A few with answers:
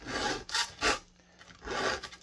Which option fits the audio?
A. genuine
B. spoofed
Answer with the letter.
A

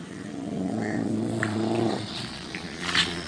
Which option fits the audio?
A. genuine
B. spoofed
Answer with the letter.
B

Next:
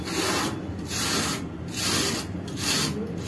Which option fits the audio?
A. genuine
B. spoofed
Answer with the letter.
A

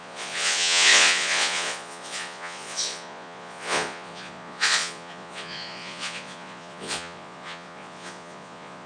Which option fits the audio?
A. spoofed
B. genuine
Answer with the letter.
A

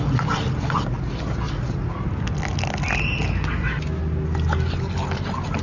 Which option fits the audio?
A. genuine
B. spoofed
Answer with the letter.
A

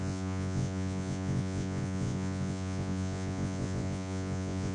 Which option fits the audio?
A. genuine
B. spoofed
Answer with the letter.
B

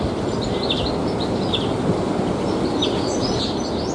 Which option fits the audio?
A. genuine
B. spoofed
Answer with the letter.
A